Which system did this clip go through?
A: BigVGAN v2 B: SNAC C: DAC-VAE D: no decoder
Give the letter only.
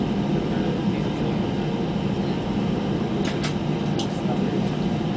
D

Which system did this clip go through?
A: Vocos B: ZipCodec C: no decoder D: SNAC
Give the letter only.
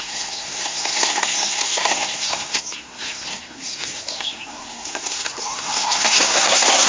D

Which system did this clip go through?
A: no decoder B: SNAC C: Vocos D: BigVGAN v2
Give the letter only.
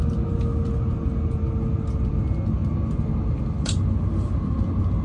A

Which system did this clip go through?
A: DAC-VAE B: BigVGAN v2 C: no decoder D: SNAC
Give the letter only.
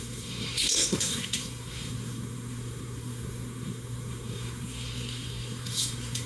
D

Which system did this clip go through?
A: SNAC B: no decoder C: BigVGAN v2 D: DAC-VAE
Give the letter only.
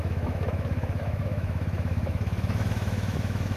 D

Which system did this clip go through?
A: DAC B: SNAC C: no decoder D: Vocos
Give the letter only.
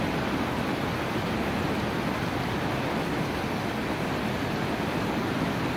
C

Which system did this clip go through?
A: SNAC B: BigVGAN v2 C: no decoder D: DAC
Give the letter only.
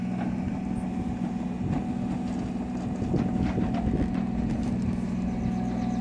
C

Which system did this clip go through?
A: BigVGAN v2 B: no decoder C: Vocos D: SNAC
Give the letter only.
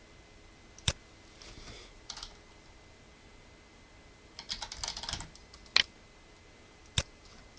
B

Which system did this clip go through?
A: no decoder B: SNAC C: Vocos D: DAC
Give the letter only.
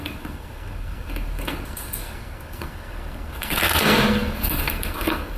B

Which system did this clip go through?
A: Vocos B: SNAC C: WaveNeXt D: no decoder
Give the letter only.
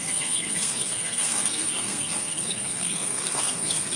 B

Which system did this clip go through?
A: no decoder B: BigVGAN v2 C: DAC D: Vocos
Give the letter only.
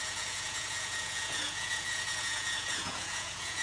D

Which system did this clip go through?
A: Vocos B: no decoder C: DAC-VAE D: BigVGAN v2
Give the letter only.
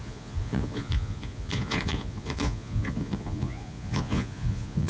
A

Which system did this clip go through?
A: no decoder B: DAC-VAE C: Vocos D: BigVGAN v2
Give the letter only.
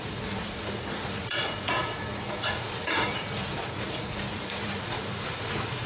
C